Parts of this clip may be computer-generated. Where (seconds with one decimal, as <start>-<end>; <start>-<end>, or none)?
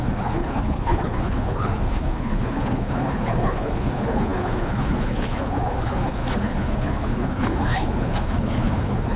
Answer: 0.0-9.2